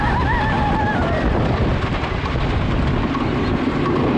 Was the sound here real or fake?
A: real